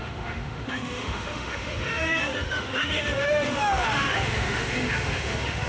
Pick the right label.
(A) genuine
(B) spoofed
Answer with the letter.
B